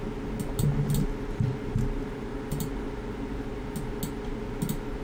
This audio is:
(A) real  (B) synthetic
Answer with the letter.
A